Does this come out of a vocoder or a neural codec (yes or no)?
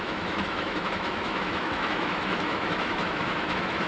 yes